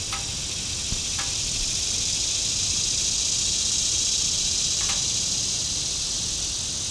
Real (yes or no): yes